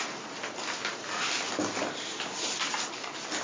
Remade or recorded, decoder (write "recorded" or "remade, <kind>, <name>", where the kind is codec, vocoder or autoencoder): recorded